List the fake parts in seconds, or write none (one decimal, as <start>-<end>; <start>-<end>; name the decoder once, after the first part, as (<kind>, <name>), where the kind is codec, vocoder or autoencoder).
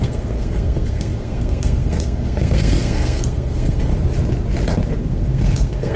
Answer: 0.0-3.9 (codec, SNAC); 5.0-6.0